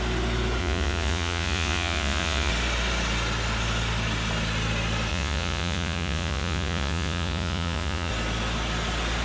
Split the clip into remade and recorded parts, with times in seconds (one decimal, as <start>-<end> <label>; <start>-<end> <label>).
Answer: 0.0-0.6 recorded; 0.6-2.5 remade; 2.5-5.1 recorded; 5.1-8.1 remade; 8.1-9.2 recorded